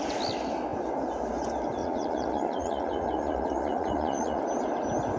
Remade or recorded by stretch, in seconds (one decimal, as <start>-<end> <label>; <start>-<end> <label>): 0.0-1.8 recorded; 1.8-4.4 remade; 4.4-5.2 recorded